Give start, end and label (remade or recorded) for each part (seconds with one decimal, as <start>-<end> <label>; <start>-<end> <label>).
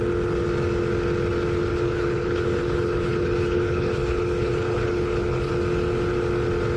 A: 0.0-1.7 recorded; 1.7-5.5 remade; 5.5-6.8 recorded